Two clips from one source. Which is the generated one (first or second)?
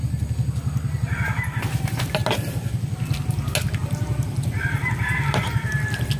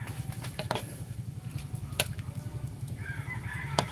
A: second